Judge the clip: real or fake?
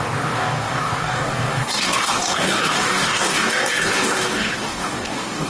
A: fake